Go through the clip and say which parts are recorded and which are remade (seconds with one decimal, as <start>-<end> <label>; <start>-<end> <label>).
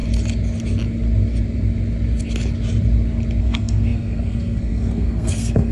0.0-3.4 recorded; 3.4-5.7 remade